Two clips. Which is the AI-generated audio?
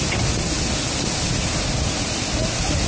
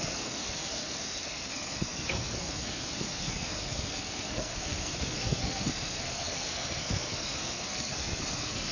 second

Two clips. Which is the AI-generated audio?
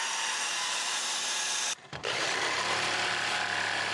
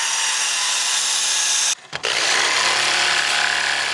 first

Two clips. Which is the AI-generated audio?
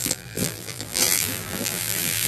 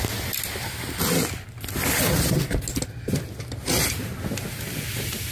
first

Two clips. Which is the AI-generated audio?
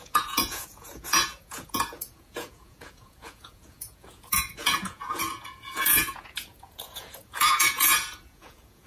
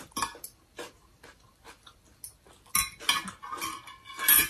first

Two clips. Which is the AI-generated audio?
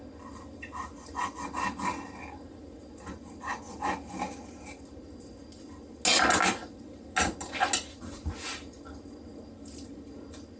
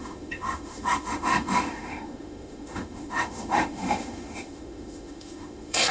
second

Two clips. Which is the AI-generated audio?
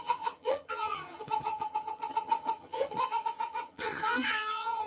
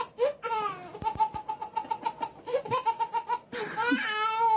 first